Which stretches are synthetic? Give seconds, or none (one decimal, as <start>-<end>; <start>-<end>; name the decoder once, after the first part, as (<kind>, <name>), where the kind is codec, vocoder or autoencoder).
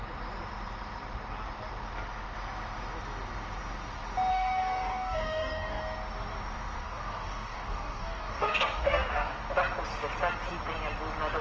4.3-5.8 (codec, DAC); 6.8-9.4